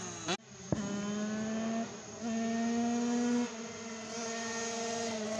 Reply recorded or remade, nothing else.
recorded